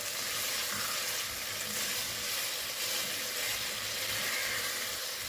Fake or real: real